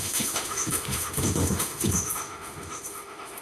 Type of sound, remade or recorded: remade